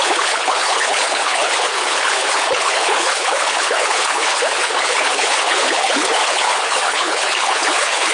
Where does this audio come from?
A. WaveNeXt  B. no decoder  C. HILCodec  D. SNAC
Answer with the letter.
C